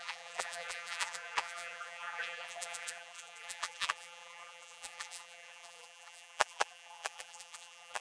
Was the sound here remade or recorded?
remade